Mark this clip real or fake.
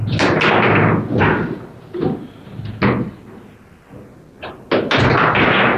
real